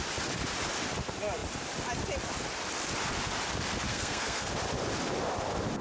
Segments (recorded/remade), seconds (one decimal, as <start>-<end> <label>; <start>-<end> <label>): 0.0-3.9 recorded; 3.9-4.5 remade; 4.5-5.8 recorded